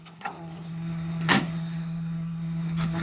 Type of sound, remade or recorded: remade